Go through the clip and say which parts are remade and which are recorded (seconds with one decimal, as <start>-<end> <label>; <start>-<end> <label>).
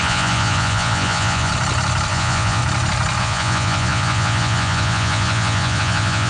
0.0-1.5 remade; 1.5-2.1 recorded; 2.1-2.6 remade; 2.6-3.2 recorded; 3.2-6.3 remade